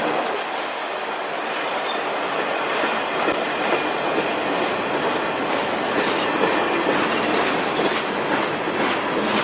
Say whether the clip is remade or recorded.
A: recorded